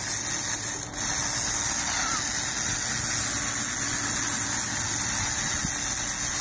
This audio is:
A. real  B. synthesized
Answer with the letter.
A